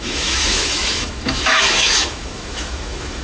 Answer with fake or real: fake